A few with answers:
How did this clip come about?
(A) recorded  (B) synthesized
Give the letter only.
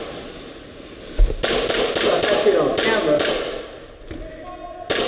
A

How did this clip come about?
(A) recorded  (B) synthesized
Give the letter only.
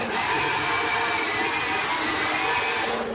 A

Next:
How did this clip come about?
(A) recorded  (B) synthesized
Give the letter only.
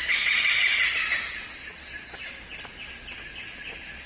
B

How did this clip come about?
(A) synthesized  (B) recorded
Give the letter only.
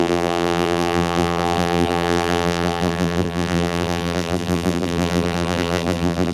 A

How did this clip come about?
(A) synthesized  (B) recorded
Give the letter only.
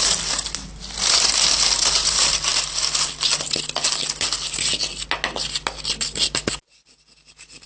B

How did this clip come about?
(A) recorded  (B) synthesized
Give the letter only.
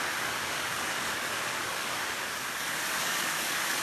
B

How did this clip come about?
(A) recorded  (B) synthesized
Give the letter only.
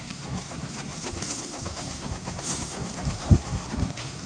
B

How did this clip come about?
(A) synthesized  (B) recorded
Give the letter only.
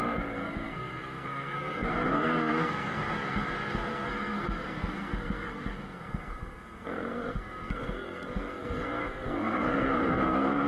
A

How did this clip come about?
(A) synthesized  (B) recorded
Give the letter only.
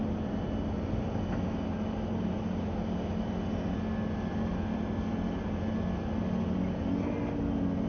B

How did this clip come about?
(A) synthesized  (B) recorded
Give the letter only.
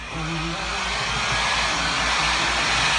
B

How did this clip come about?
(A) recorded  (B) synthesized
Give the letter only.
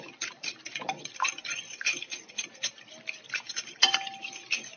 A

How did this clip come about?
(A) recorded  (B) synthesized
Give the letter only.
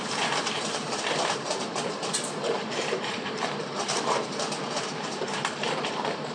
B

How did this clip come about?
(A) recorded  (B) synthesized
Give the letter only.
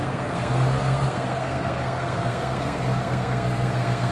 B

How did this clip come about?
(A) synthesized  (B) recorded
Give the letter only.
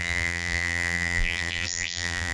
A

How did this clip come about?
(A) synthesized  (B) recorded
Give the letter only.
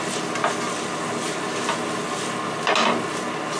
B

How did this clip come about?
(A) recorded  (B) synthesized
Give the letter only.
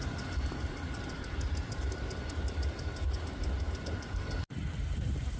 A